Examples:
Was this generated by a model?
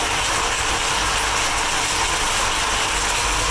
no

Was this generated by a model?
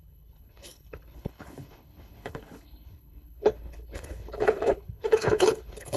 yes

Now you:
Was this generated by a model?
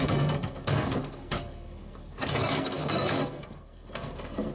yes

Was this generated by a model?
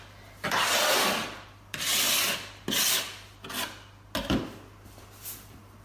no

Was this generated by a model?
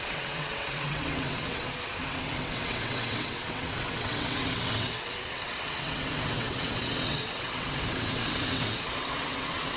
yes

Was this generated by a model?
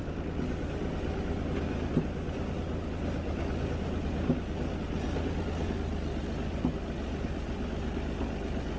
no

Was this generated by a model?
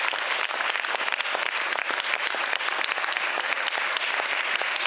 yes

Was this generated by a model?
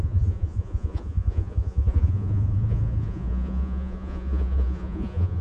yes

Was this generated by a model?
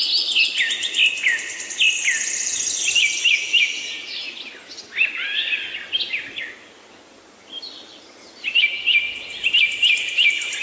no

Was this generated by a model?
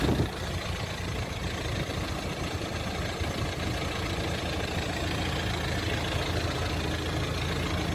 no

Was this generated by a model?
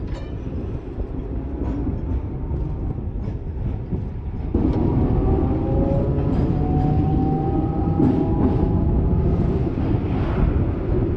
no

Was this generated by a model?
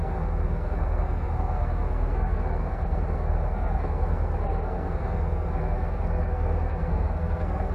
yes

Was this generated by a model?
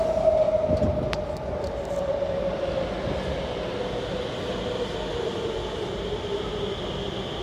no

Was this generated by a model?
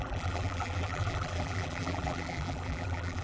yes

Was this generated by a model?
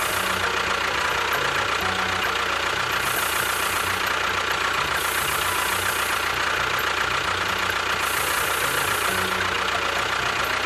no